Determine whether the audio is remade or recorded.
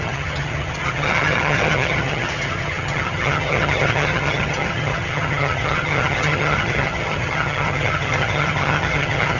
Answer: remade